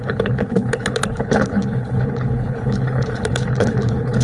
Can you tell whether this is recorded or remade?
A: remade